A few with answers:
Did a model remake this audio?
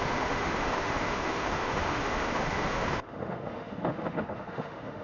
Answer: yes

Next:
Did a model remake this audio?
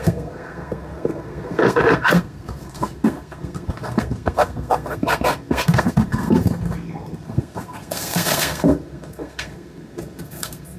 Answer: yes